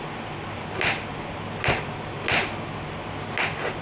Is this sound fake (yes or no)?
no